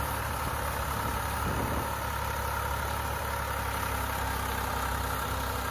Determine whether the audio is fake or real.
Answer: real